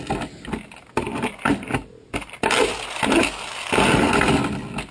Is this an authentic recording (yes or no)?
yes